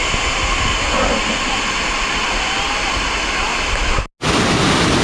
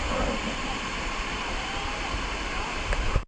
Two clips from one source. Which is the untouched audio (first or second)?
first